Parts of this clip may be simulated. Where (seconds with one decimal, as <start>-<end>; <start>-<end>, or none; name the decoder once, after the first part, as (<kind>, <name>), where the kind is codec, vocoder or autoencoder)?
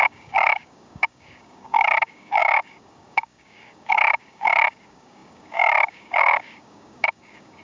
0.0-7.6 (codec, DAC)